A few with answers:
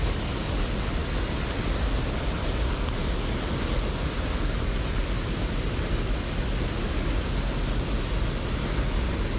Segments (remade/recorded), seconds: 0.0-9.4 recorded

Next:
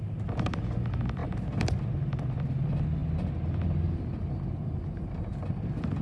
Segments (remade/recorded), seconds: 0.0-6.0 recorded

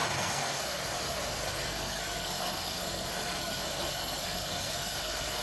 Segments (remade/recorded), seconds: 0.0-5.4 remade

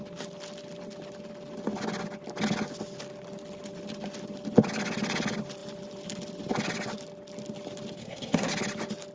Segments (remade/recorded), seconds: 0.0-8.0 recorded; 8.0-8.5 remade; 8.5-9.1 recorded

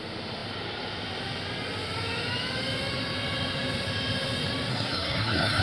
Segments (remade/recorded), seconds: 0.0-4.7 recorded; 4.7-5.6 remade

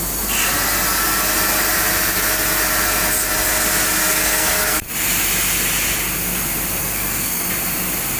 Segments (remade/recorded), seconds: 0.0-4.0 recorded; 4.0-4.8 remade; 4.8-6.8 recorded; 6.8-7.5 remade; 7.5-8.2 recorded